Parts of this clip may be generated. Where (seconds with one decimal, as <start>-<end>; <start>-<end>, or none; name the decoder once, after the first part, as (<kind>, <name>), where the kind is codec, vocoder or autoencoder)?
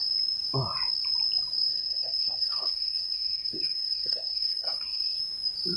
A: 1.7-5.2 (codec, SNAC)